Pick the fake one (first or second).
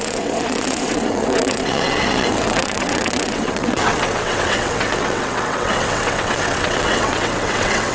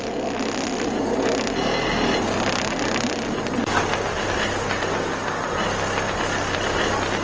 first